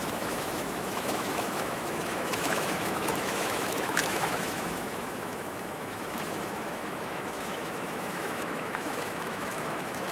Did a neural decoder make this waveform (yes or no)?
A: yes